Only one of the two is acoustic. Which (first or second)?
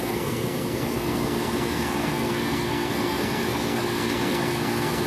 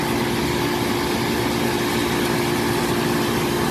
second